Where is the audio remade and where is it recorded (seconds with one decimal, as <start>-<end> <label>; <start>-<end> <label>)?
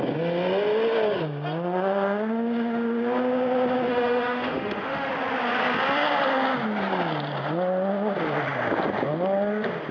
0.0-3.9 recorded; 3.9-5.1 remade; 5.1-9.9 recorded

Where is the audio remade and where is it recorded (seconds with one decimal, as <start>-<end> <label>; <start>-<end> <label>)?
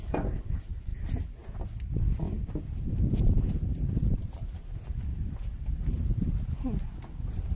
0.0-0.9 remade; 0.9-3.2 recorded; 3.2-5.1 remade; 5.1-7.5 recorded